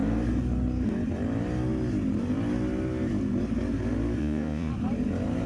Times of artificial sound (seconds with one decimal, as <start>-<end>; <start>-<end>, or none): 4.2-4.7